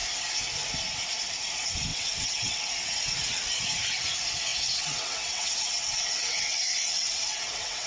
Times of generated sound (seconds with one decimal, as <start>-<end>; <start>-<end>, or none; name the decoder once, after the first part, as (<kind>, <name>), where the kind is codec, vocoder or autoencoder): 1.9-2.7 (vocoder, WaveNeXt); 4.5-7.9